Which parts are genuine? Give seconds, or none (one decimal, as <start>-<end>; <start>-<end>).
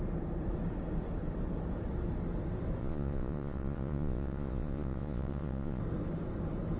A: 0.0-2.8; 5.8-6.8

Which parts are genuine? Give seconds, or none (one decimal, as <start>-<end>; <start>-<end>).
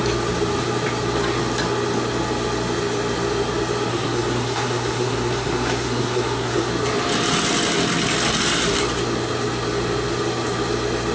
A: 0.0-3.9; 6.7-11.1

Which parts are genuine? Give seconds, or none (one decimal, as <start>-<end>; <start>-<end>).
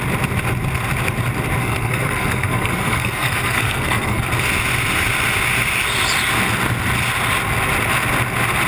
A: 0.0-1.6; 4.2-8.7